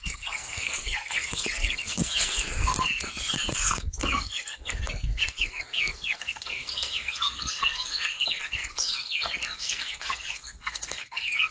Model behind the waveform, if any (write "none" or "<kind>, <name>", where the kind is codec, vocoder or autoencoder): codec, SNAC